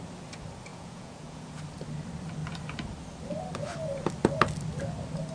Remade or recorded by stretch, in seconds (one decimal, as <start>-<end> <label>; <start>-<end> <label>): 0.0-0.7 recorded; 0.7-1.6 remade; 1.6-5.3 recorded